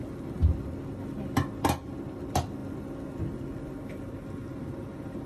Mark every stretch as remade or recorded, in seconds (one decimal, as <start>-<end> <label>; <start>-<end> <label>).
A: 0.0-5.3 recorded